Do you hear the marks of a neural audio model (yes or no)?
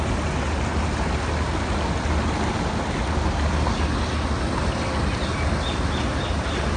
no